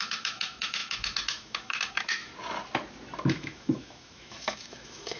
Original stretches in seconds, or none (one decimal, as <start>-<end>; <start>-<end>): 2.3-3.3